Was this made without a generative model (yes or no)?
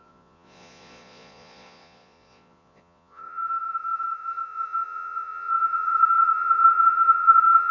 no